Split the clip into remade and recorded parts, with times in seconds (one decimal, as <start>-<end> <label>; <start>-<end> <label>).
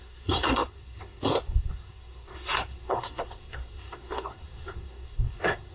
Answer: 0.0-5.7 remade